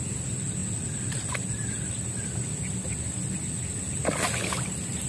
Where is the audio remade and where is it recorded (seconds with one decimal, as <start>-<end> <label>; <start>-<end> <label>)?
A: 0.0-5.1 recorded